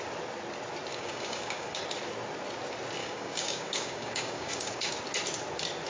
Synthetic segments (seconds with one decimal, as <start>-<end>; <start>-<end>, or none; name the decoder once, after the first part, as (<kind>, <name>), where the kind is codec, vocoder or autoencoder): 0.9-1.8 (codec, DAC); 3.0-4.9